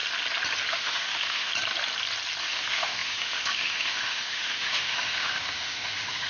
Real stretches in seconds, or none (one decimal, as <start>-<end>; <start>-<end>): 0.0-0.7; 1.5-2.4